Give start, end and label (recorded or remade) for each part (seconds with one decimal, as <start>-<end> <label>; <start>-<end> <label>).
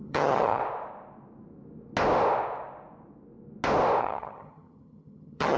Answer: 0.0-0.6 remade; 0.6-4.0 recorded; 4.0-5.6 remade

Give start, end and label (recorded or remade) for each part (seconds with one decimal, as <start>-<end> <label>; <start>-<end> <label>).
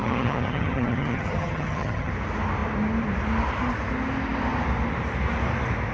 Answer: 0.0-2.1 remade; 2.1-5.9 recorded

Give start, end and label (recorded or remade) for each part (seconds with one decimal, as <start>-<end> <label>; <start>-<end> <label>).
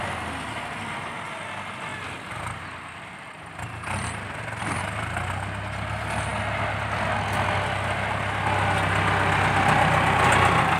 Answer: 0.0-10.8 recorded